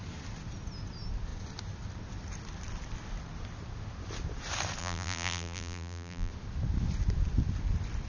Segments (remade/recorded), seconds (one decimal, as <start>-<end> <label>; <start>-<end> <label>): 0.0-4.8 recorded; 4.8-6.3 remade; 6.3-8.1 recorded